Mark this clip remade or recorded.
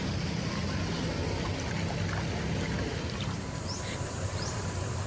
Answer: recorded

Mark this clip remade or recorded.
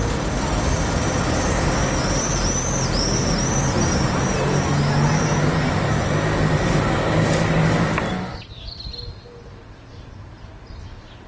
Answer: recorded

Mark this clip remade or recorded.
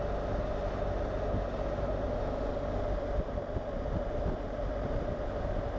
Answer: recorded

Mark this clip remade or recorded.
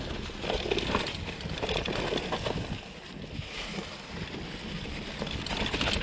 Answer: recorded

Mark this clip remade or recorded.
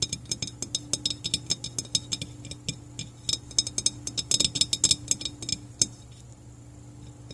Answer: recorded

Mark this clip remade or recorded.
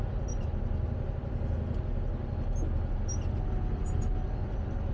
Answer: recorded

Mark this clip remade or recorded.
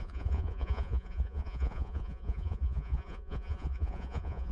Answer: remade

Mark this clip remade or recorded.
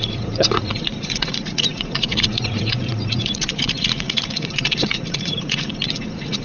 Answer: remade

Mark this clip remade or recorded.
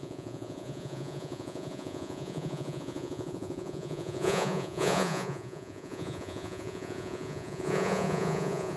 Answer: remade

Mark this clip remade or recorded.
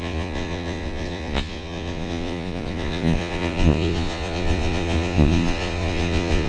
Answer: remade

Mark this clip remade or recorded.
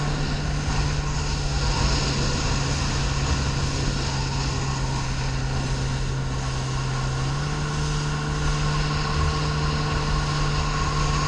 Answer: recorded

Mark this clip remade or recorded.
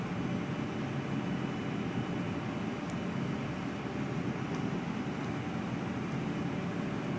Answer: recorded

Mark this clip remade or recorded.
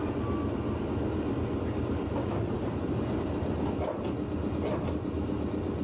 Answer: recorded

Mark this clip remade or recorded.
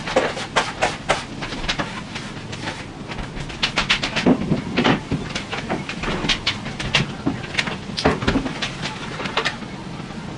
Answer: recorded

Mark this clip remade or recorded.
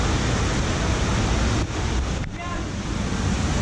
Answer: recorded